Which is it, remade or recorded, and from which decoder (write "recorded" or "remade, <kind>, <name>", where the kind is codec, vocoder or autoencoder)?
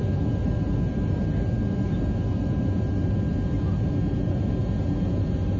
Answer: recorded